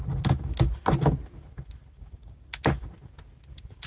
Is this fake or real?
real